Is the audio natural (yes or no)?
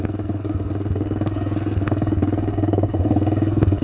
no